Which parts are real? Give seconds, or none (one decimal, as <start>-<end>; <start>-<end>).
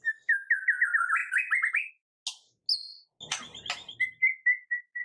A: 0.0-5.0